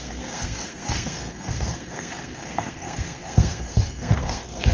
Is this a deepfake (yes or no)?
yes